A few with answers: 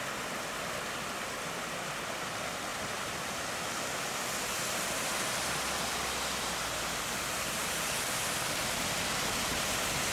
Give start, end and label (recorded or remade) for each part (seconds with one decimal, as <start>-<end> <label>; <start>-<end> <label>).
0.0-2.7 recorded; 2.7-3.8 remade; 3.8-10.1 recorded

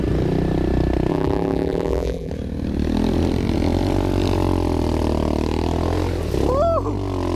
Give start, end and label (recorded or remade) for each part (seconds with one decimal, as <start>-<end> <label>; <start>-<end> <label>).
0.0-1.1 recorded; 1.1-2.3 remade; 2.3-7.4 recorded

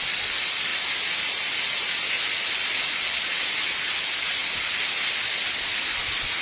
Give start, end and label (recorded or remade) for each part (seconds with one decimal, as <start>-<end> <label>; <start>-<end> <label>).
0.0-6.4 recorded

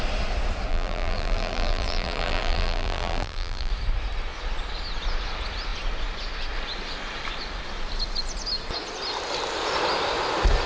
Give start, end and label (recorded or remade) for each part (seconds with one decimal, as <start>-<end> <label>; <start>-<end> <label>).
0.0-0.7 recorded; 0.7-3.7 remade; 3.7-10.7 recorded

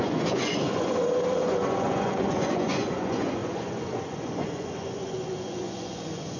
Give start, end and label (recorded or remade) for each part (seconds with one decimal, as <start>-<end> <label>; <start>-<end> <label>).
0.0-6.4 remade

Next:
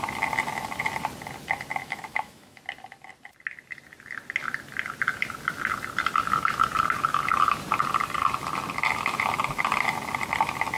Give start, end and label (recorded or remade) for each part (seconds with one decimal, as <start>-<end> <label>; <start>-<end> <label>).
0.0-1.8 recorded; 1.8-2.6 remade; 2.6-10.8 recorded

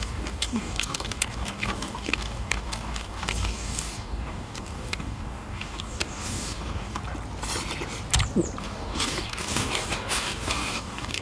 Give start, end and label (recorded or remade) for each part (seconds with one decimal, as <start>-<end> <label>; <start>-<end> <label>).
0.0-7.0 remade; 7.0-8.6 recorded; 8.6-11.2 remade

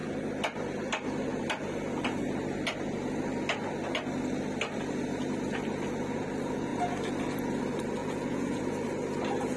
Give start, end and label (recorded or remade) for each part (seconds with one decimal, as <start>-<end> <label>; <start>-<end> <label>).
0.0-8.0 recorded; 8.0-8.6 remade; 8.6-9.6 recorded